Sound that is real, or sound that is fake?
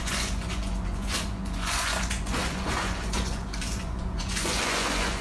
fake